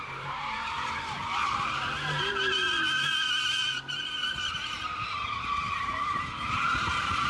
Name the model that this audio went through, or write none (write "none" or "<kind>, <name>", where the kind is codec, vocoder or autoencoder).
vocoder, BigVGAN v2